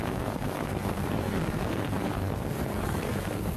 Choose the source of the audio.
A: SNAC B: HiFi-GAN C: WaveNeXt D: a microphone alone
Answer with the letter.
A